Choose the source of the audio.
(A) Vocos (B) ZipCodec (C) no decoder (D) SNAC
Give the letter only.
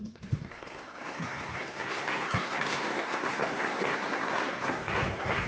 D